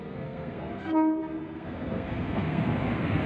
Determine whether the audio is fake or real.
fake